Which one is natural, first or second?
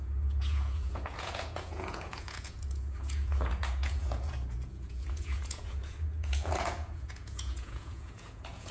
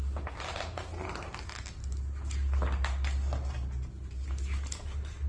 second